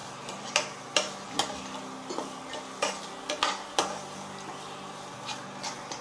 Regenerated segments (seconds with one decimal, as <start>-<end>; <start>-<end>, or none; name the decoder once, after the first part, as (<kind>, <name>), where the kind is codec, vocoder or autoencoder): none